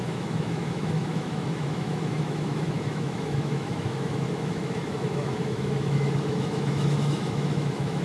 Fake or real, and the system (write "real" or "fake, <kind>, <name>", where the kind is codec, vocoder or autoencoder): fake, autoencoder, DAC-VAE